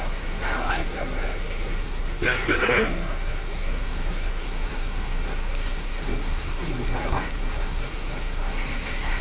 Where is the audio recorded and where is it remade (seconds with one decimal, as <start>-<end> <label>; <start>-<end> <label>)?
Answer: 0.0-9.2 remade